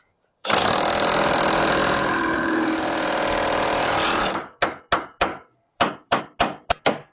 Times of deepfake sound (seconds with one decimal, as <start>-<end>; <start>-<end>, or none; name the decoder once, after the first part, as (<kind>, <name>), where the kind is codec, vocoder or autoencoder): 1.8-4.2 (vocoder, BigVGAN v2); 5.3-6.2

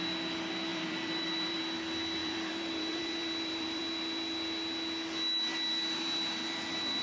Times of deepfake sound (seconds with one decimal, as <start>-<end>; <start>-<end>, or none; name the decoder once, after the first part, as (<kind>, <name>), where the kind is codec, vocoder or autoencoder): 0.7-1.6 (vocoder, BigVGAN v2); 2.2-3.8

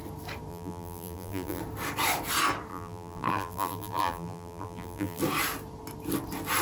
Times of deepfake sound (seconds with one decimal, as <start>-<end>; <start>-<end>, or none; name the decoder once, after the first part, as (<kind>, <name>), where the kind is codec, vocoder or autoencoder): 0.5-1.6 (vocoder, BigVGAN v2); 2.7-5.2

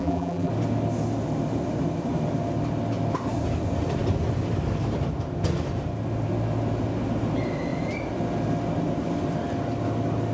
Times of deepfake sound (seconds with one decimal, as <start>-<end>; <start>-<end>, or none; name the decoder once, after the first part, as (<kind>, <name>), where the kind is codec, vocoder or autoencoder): 0.0-0.5 (vocoder, BigVGAN v2)

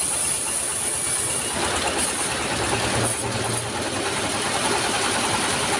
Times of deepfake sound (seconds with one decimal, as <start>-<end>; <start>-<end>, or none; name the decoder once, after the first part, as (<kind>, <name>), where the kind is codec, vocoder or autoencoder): 0.0-0.7 (vocoder, BigVGAN v2); 4.2-5.8

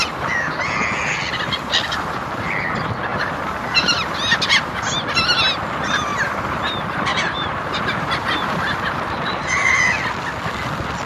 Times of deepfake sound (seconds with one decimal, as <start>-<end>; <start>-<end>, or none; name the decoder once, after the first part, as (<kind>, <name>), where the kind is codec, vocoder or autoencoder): 3.1-4.8 (vocoder, BigVGAN v2); 7.1-9.9

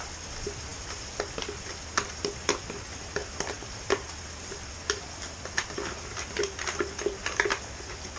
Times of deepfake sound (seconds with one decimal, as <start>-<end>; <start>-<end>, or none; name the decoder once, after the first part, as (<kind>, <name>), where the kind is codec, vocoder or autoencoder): none

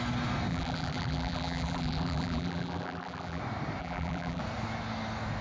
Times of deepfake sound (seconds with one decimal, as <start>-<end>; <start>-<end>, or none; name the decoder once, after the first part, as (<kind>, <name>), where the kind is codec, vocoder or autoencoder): 0.5-3.4 (vocoder, BigVGAN v2); 3.8-4.4